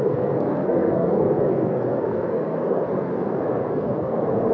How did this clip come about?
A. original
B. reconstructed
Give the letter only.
B